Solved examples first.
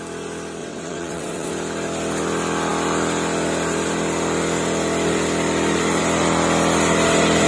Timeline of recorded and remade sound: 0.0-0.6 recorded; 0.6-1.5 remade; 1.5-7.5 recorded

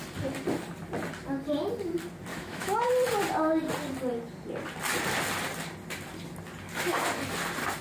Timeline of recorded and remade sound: 0.0-2.3 recorded; 2.3-2.9 remade; 2.9-7.8 recorded

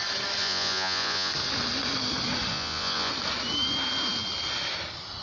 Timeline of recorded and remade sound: 0.0-0.4 recorded; 0.4-1.3 remade; 1.3-2.5 recorded; 2.5-3.1 remade; 3.1-5.2 recorded

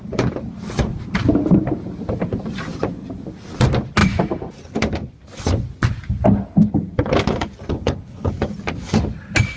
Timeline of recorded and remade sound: 0.0-7.7 recorded; 7.7-8.3 remade; 8.3-9.6 recorded

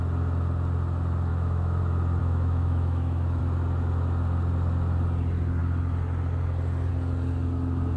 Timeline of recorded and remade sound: 0.0-1.3 recorded; 1.3-1.8 remade; 1.8-2.2 recorded; 2.2-3.4 remade; 3.4-8.0 recorded